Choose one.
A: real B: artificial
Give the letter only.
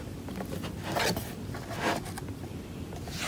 A